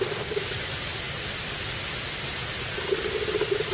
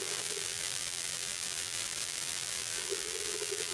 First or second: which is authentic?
first